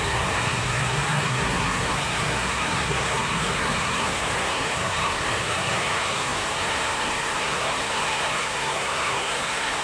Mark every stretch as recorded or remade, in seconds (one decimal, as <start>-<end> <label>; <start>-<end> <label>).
0.0-9.8 remade